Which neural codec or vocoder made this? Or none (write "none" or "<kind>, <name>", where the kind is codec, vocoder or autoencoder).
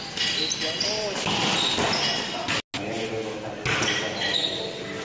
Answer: none